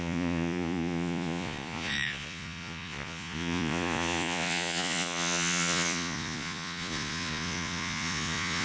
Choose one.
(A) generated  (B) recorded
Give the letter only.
A